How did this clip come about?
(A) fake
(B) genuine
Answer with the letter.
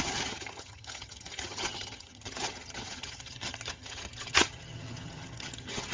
A